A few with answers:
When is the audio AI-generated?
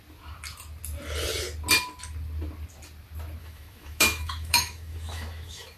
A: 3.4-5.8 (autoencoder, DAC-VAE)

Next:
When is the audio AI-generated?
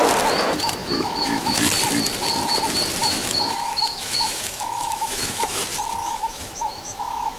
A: 0.8-1.6 (autoencoder, DAC-VAE); 3.0-5.6; 6.0-7.4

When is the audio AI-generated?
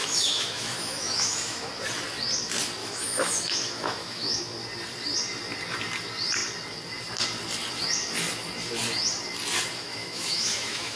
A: 0.0-1.7 (autoencoder, DAC-VAE); 2.8-4.4; 9.8-11.0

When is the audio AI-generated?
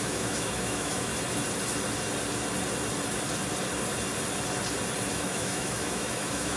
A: 0.0-1.1 (autoencoder, DAC-VAE); 5.1-6.6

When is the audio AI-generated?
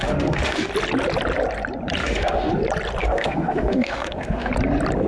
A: 0.0-0.7 (autoencoder, DAC-VAE); 2.0-2.5; 3.0-4.5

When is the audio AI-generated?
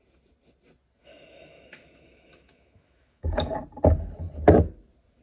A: 1.0-3.5 (autoencoder, DAC-VAE)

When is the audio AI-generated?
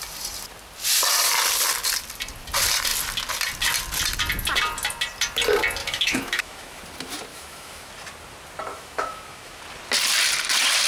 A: 5.8-6.8 (autoencoder, DAC-VAE); 7.3-7.9; 8.7-9.6